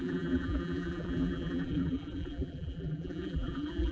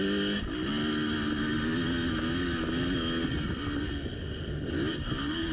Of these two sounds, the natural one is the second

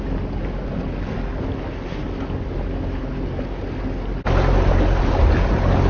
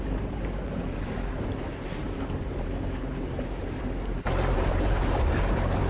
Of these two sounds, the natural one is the first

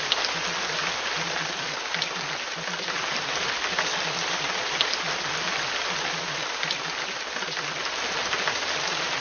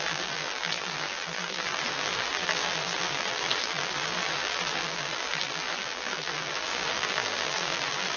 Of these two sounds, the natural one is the first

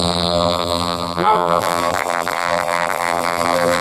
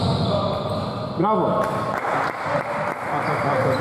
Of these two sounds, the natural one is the second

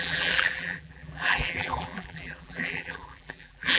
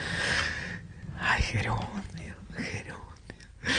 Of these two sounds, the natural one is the second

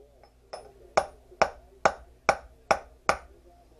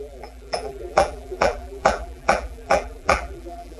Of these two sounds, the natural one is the first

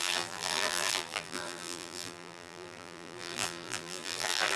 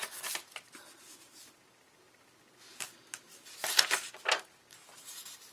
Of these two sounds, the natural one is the second